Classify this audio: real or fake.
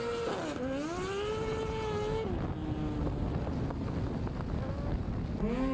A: real